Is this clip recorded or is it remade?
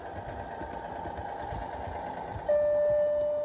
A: recorded